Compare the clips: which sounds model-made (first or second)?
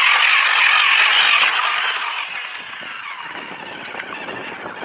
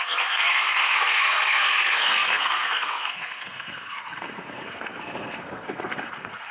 second